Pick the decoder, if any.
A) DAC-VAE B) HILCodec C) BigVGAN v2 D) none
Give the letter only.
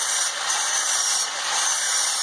C